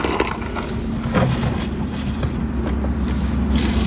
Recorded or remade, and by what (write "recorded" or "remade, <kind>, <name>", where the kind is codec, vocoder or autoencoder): recorded